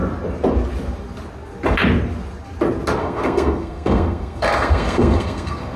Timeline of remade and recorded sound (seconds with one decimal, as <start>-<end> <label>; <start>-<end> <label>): 0.0-3.0 recorded; 3.0-5.8 remade